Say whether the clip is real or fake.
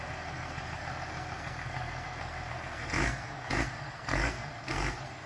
fake